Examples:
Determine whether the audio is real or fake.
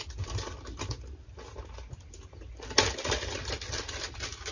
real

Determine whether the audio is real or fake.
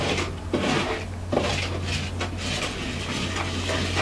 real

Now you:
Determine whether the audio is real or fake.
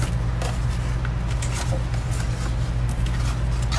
real